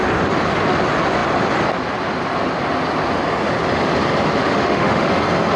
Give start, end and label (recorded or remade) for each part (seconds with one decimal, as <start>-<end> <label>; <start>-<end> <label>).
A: 0.0-4.4 recorded; 4.4-5.1 remade; 5.1-5.6 recorded